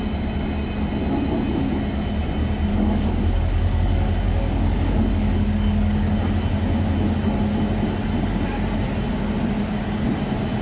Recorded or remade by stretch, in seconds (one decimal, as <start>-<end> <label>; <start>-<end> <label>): 0.0-2.7 recorded; 2.7-6.2 remade; 6.2-10.6 recorded

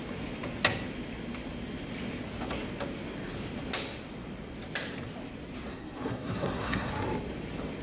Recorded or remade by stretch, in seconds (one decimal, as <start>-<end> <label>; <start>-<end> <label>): 0.0-5.7 recorded; 5.7-6.9 remade; 6.9-7.8 recorded

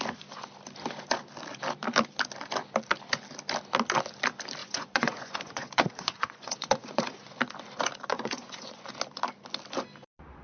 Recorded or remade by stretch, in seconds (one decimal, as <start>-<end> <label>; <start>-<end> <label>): 0.0-4.6 recorded; 4.6-7.4 remade; 7.4-8.1 recorded; 8.1-8.9 remade; 8.9-10.4 recorded

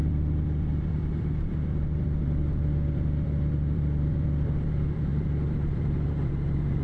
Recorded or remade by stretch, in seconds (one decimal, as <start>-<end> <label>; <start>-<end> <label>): 0.0-6.8 remade

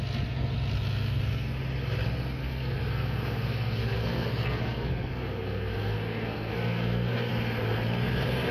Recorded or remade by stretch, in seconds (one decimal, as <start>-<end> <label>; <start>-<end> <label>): 0.0-2.4 recorded; 2.4-7.3 remade; 7.3-8.5 recorded

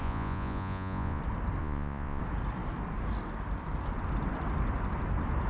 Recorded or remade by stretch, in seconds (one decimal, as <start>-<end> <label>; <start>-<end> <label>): 0.0-1.2 remade; 1.2-1.6 recorded; 1.6-2.2 remade; 2.2-5.5 recorded